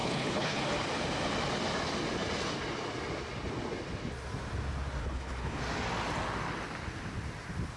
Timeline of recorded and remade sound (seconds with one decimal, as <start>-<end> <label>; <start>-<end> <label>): 0.0-0.6 remade; 0.6-5.0 recorded; 5.0-5.6 remade; 5.6-7.8 recorded